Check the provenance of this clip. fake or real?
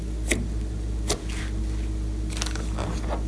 real